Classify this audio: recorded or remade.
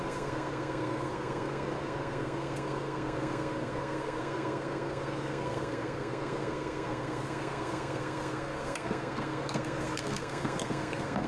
remade